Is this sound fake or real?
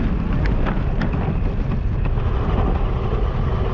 real